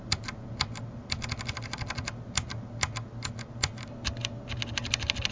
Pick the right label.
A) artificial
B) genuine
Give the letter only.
B